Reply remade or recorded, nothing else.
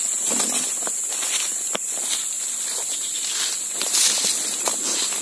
recorded